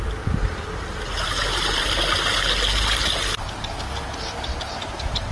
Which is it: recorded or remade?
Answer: recorded